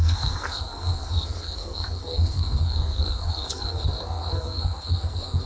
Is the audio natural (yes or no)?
no